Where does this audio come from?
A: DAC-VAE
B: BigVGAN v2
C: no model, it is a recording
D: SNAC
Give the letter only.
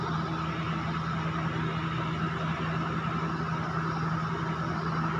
C